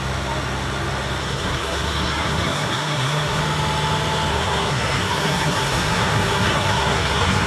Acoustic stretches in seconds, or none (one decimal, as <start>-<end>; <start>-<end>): 0.0-1.2; 3.4-4.3